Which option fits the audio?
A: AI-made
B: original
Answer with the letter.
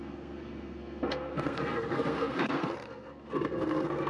A